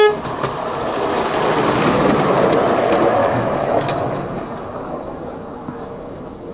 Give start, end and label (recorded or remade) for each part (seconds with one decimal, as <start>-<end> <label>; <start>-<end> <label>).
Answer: 0.0-3.2 recorded; 3.2-6.5 remade